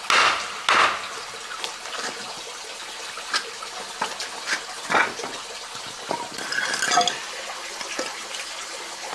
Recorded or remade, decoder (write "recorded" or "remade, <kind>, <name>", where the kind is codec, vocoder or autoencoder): recorded